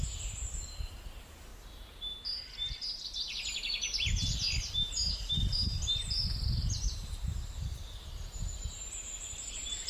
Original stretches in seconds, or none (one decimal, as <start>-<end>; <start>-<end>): 1.5-6.7